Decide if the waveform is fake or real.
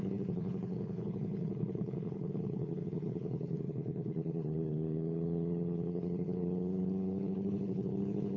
fake